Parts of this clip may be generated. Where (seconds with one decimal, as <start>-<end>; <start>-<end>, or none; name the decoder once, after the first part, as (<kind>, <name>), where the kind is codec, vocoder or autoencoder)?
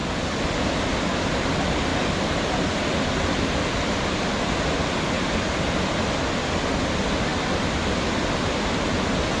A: none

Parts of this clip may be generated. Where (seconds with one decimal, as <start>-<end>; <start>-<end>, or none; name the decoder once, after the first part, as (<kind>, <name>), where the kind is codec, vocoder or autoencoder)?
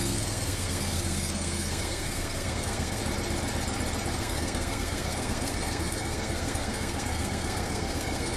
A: 0.0-3.0 (codec, SNAC); 4.2-8.4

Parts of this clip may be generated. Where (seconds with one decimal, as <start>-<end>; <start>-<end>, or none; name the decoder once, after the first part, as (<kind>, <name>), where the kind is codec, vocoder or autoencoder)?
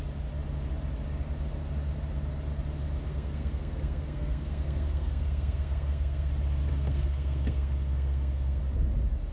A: 3.1-6.3 (codec, SNAC); 6.7-8.6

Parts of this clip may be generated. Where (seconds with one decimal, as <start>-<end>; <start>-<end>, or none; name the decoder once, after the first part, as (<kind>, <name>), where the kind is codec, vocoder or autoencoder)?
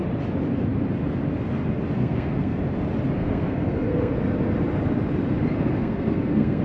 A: 2.0-2.6 (codec, SNAC); 3.2-4.1; 5.8-6.6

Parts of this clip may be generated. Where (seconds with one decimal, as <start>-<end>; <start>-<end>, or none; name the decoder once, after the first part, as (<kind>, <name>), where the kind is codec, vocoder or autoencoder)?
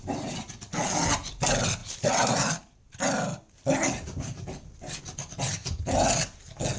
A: none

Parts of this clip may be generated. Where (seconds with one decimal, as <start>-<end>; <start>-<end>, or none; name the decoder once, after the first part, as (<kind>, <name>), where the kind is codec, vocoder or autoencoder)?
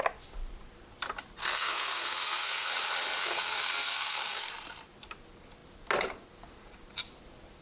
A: 1.4-2.7 (codec, SNAC); 3.2-4.5